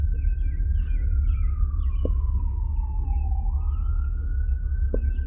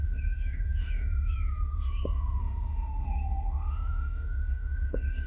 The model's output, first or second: second